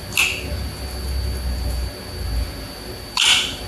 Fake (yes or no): no